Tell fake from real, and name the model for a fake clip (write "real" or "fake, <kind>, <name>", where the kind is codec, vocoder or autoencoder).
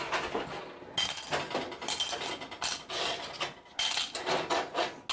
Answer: real